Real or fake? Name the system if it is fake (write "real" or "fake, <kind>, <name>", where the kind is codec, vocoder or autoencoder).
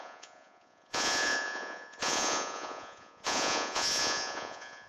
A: fake, vocoder, Vocos